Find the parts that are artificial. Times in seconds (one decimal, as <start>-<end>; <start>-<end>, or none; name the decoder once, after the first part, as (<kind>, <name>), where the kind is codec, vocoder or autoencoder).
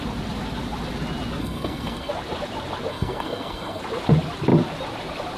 1.4-2.1 (codec, SNAC); 2.9-3.8